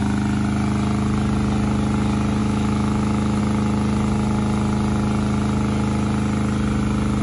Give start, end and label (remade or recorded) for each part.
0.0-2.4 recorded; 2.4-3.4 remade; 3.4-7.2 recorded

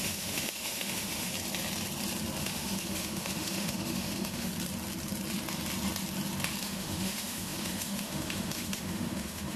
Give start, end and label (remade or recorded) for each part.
0.0-1.3 remade; 1.3-2.4 recorded; 2.4-4.5 remade; 4.5-6.6 recorded; 6.6-9.6 remade

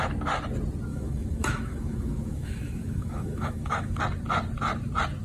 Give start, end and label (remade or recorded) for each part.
0.0-0.9 recorded; 0.9-4.0 remade; 4.0-5.2 recorded